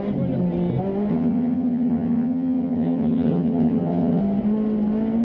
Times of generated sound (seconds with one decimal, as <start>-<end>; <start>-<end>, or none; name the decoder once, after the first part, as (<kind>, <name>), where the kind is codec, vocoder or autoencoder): 1.1-4.2 (vocoder, HiFi-GAN)